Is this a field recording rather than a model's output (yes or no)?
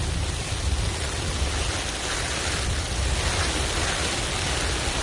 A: yes